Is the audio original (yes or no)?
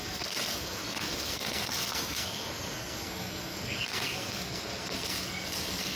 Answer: no